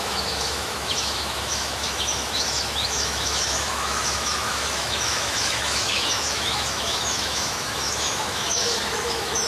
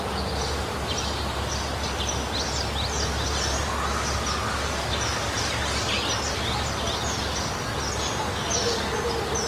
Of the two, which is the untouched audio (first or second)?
second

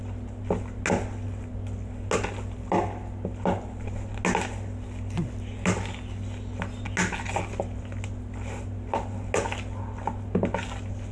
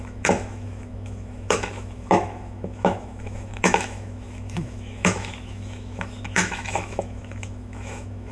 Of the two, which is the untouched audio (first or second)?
first